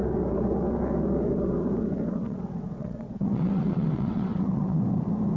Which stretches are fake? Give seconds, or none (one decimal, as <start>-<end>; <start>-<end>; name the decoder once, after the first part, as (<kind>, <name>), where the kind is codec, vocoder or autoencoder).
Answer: 2.2-4.8 (vocoder, WaveNeXt)